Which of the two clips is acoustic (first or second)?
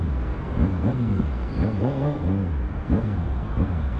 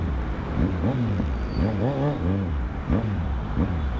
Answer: second